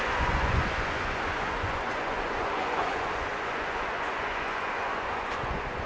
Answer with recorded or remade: remade